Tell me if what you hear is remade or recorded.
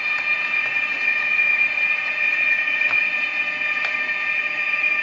remade